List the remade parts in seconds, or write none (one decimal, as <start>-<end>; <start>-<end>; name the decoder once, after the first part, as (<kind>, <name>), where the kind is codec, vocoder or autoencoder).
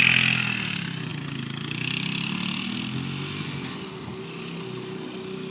none